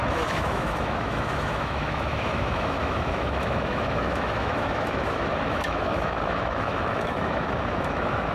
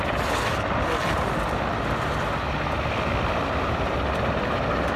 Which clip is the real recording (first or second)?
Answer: second